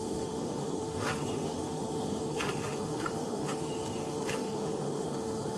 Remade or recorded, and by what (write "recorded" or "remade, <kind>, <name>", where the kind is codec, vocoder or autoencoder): remade, autoencoder, DAC-VAE